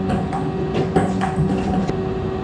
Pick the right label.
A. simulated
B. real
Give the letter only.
B